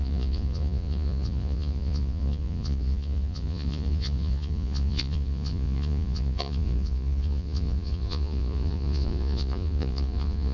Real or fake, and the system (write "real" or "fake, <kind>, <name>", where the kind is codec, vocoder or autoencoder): fake, vocoder, Vocos